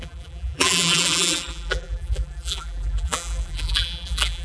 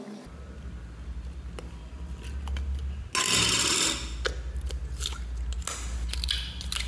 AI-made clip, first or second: first